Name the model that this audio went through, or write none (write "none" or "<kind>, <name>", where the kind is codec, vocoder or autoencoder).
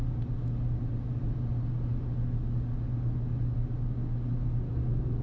none